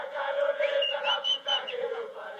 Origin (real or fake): fake